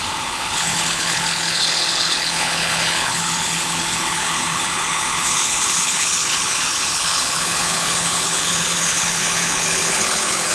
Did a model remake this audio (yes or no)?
yes